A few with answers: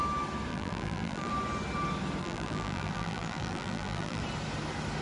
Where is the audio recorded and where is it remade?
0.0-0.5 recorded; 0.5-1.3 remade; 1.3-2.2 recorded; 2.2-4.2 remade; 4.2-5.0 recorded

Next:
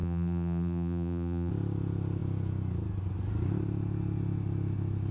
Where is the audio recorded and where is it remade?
0.0-1.5 remade; 1.5-5.1 recorded

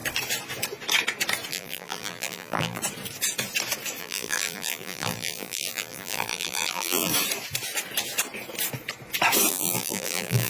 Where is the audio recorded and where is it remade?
0.0-1.5 recorded; 1.5-2.8 remade; 2.8-4.0 recorded; 4.0-7.1 remade; 7.1-9.5 recorded; 9.5-10.5 remade

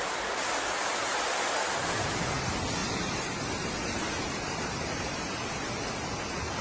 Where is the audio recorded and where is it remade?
0.0-1.1 recorded; 1.1-1.7 remade; 1.7-2.8 recorded; 2.8-3.4 remade; 3.4-6.6 recorded

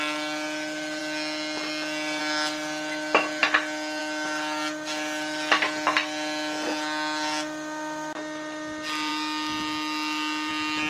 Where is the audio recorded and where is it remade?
0.0-10.9 recorded

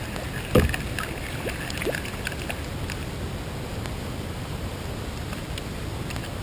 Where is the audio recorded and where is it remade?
0.0-3.7 recorded; 3.7-5.7 remade; 5.7-6.4 recorded

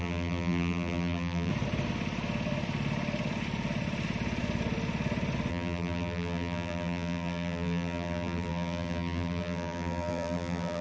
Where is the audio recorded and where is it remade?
0.0-1.5 remade; 1.5-5.5 recorded; 5.5-10.8 remade

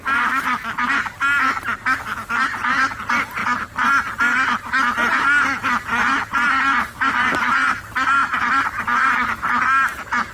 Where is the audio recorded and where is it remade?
0.0-8.2 recorded; 8.2-8.8 remade; 8.8-10.3 recorded